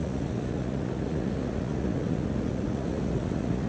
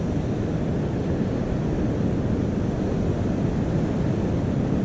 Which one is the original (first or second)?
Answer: second